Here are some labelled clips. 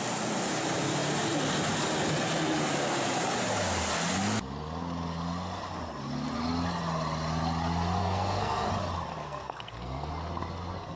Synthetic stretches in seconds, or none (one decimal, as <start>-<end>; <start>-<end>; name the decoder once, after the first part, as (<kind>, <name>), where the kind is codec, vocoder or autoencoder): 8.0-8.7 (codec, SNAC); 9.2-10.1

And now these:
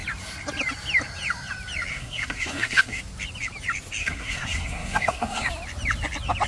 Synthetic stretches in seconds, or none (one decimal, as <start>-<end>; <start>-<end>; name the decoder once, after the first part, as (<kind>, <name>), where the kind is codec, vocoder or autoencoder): 1.9-3.0 (codec, SNAC); 4.0-5.5

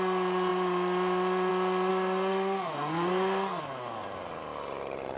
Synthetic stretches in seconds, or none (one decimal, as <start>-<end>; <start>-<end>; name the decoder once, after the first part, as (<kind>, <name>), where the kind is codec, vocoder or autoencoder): 1.9-3.6 (codec, SNAC)

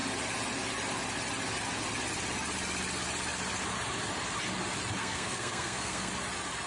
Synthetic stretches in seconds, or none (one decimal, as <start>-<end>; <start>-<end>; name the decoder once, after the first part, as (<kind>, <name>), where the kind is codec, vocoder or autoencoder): 5.0-6.1 (codec, SNAC)

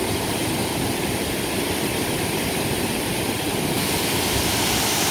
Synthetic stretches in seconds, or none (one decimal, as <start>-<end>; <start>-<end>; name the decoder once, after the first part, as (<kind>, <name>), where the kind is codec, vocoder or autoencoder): none

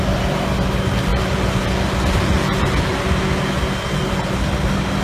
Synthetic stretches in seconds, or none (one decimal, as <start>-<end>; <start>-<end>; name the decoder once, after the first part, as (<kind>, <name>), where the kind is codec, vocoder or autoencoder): none